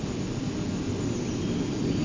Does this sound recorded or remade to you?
recorded